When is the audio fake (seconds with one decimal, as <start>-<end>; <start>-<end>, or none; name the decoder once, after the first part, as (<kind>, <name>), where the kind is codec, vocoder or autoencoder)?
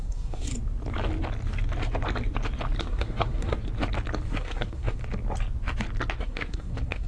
0.0-0.5 (codec, SNAC); 2.8-3.6; 4.4-5.0; 6.2-7.1